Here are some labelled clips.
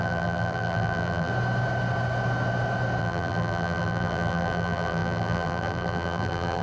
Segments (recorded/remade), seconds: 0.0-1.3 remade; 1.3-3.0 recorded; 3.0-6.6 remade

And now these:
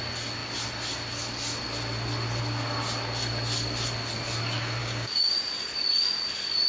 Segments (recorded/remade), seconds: 0.0-4.8 recorded; 4.8-5.5 remade; 5.5-6.7 recorded

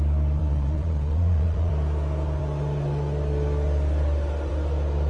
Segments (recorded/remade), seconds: 0.0-0.4 recorded; 0.4-1.7 remade; 1.7-5.1 recorded